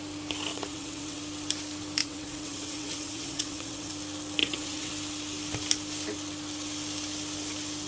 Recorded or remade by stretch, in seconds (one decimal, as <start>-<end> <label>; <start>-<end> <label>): 0.0-0.5 recorded; 0.5-1.2 remade; 1.2-2.0 recorded; 2.0-3.9 remade; 3.9-4.4 recorded; 4.4-4.9 remade; 4.9-7.9 recorded